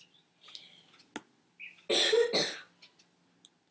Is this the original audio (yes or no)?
yes